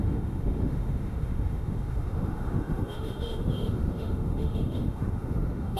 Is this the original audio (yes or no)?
no